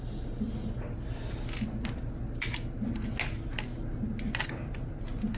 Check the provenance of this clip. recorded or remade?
recorded